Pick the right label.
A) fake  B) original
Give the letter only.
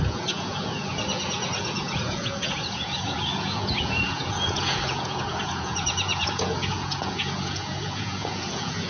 A